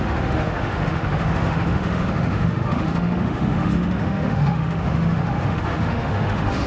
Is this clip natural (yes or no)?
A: no